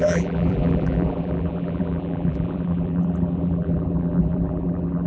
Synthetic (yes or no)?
yes